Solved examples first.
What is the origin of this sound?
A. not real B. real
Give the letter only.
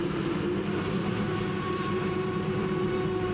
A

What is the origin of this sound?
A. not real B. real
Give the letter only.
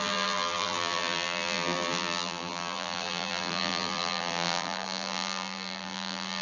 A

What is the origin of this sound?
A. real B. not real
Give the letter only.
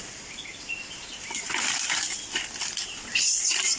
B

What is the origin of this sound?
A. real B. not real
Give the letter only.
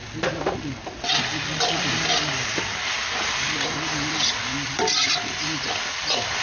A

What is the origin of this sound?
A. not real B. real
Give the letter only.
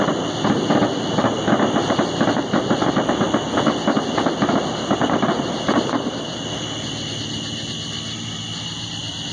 B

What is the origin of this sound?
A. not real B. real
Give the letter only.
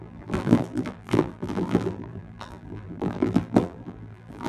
A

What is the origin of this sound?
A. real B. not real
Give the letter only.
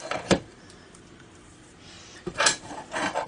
B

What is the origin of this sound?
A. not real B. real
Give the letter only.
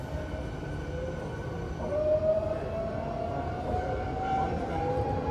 A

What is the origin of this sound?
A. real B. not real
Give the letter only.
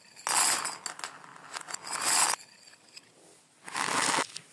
A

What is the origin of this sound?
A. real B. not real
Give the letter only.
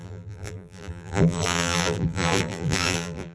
B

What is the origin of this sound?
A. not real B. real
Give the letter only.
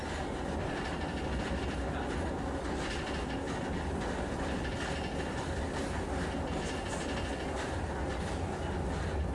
B